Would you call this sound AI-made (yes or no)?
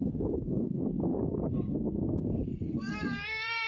yes